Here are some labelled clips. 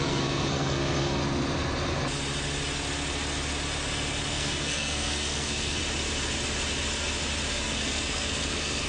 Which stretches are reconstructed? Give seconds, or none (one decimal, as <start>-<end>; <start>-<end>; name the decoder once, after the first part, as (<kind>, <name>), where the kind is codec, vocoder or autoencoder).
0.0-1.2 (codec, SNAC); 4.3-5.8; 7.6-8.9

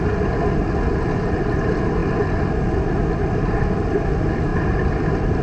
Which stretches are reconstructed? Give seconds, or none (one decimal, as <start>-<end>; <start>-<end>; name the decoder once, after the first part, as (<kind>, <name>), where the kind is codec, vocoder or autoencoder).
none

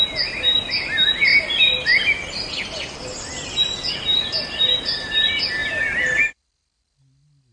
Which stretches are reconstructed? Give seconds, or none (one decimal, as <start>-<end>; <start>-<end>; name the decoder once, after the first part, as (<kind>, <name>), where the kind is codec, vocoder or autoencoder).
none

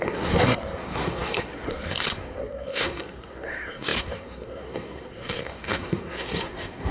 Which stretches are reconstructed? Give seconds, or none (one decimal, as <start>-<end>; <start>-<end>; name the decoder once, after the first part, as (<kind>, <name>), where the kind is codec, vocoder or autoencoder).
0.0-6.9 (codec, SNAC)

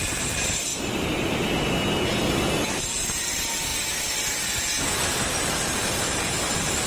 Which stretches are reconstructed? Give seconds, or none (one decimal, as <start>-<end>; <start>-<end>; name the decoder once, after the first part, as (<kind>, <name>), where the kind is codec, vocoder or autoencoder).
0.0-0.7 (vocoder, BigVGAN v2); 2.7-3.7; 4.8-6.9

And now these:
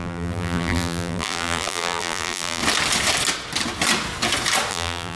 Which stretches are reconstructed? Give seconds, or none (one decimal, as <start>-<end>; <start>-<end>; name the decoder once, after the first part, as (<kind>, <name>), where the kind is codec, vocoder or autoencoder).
0.0-2.6 (vocoder, BigVGAN v2); 4.7-5.2